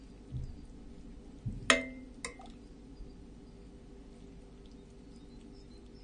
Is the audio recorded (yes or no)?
yes